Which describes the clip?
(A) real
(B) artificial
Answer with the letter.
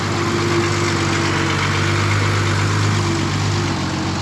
A